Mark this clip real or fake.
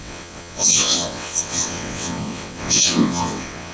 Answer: fake